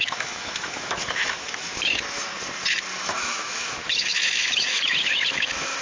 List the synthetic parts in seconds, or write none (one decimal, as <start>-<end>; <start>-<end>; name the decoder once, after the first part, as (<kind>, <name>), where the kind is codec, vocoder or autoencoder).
0.0-2.3 (autoencoder, DAC-VAE); 3.0-5.8